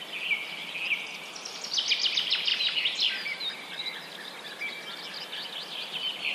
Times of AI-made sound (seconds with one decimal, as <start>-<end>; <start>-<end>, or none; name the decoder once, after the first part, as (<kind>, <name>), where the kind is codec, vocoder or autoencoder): none